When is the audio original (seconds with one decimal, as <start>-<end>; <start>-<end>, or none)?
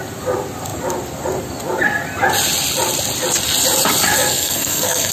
0.0-4.1